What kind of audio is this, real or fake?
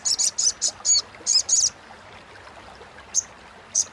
real